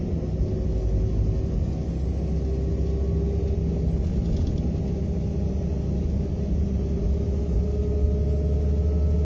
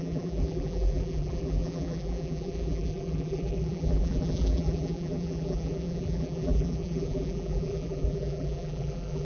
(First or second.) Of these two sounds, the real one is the first